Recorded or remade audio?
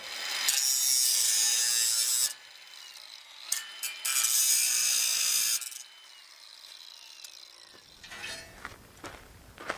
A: recorded